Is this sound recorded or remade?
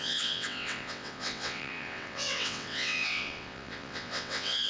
remade